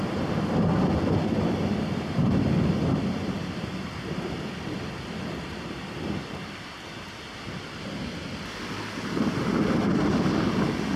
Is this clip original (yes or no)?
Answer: yes